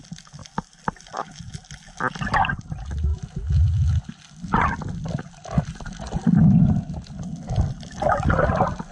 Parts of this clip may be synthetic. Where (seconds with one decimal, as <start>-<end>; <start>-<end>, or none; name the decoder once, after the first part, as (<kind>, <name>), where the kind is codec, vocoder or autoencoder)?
none

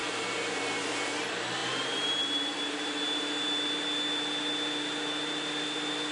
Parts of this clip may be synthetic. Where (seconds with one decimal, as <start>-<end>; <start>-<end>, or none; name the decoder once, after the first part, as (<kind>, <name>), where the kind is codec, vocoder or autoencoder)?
0.0-1.1 (vocoder, BigVGAN v2)